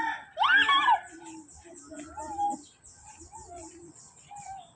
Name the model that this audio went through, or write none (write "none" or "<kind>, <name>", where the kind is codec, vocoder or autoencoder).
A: none